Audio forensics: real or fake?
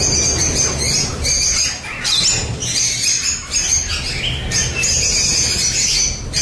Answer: real